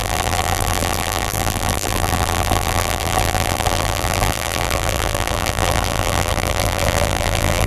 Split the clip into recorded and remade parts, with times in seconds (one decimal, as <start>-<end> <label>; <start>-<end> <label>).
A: 0.0-7.7 remade